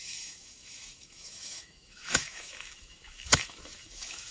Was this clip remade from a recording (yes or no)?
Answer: yes